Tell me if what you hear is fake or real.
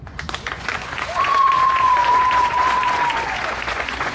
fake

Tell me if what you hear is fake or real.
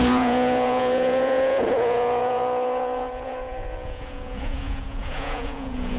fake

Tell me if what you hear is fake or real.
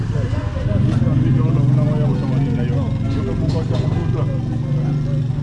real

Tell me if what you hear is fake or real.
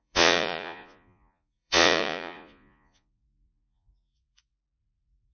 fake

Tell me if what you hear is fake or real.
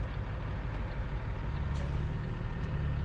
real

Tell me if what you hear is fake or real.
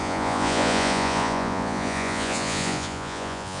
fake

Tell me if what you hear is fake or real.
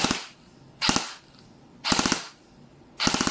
real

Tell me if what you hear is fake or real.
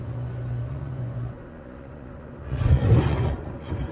fake